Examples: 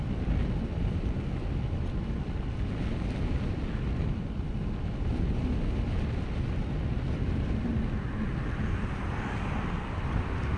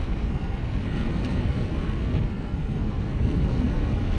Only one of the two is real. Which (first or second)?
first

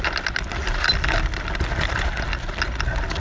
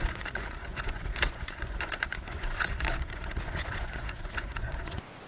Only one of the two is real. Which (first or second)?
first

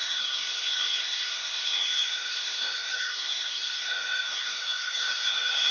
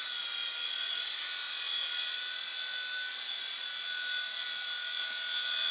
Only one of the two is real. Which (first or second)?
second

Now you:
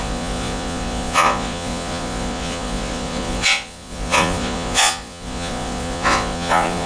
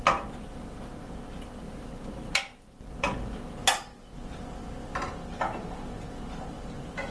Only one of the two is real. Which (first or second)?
second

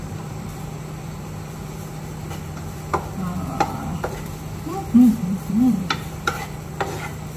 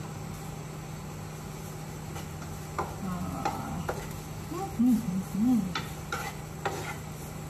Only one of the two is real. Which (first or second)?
second